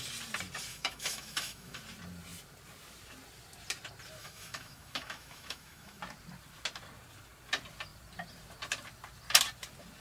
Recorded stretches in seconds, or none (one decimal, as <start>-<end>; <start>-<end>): 0.0-0.7; 1.8-4.2; 6.0-10.0